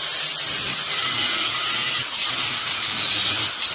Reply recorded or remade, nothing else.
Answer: recorded